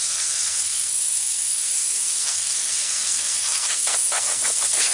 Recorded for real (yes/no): no